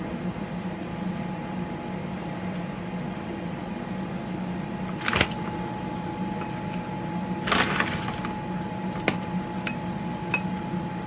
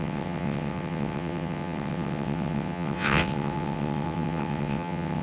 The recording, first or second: first